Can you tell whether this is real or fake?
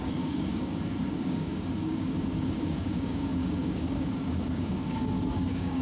fake